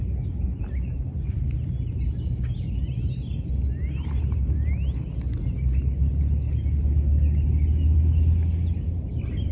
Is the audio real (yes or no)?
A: yes